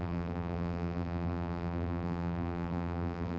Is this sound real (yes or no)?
no